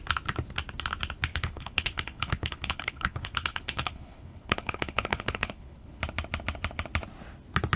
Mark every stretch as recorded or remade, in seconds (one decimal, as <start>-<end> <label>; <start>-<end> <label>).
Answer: 0.0-1.3 recorded; 1.3-6.0 remade; 6.0-7.8 recorded